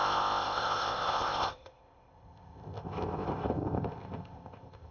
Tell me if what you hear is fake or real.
fake